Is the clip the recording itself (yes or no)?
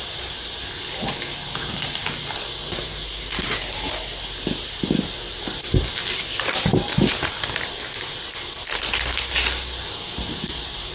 yes